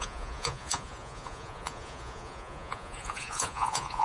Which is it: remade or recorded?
remade